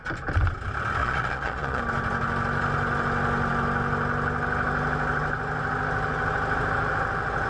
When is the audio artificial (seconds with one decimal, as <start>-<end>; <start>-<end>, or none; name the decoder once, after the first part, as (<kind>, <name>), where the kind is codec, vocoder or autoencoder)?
1.0-1.8 (vocoder, Vocos)